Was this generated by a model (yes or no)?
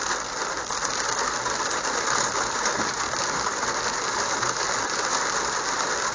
no